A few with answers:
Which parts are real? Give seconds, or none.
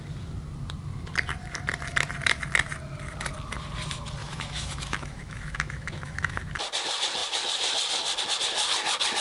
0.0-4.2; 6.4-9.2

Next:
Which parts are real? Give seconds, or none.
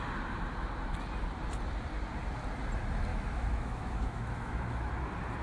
0.0-3.1; 4.9-5.4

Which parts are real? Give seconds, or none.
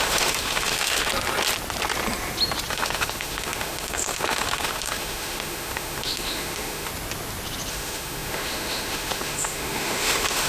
1.1-2.7; 6.9-7.7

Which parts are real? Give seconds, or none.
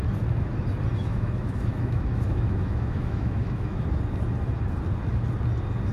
0.0-1.0; 3.8-5.9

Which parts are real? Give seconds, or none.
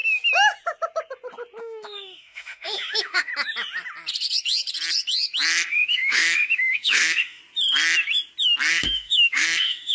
0.0-1.6; 3.3-5.7; 7.4-8.7